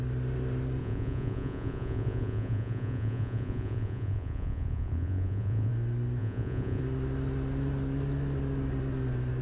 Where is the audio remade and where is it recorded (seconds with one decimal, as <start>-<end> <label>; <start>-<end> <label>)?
0.0-0.8 recorded; 0.8-5.7 remade; 5.7-6.2 recorded; 6.2-6.8 remade; 6.8-9.4 recorded